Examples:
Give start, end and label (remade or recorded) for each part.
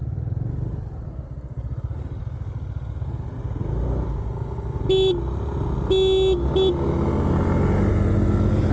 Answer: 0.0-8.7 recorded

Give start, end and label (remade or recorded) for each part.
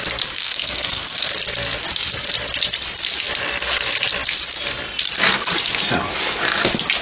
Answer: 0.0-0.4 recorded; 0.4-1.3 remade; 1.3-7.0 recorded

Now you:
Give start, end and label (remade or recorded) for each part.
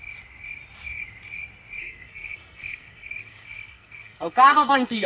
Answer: 0.0-1.8 recorded; 1.8-5.1 remade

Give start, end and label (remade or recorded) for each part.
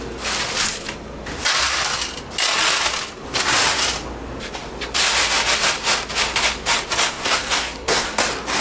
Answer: 0.0-7.0 recorded; 7.0-8.2 remade; 8.2-8.6 recorded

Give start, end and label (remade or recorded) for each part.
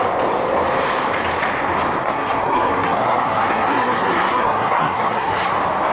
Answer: 0.0-2.0 recorded; 2.0-5.5 remade; 5.5-5.9 recorded